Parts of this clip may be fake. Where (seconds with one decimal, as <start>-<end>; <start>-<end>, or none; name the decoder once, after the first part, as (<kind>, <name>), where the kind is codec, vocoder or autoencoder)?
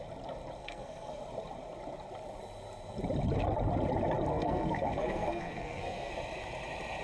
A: 0.6-1.2 (codec, SNAC); 4.3-6.1